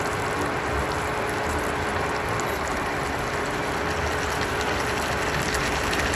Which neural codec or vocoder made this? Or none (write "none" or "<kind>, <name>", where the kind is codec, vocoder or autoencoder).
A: none